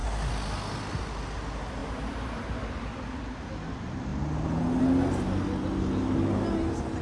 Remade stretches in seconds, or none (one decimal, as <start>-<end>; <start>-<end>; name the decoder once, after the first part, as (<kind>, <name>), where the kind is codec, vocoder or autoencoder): none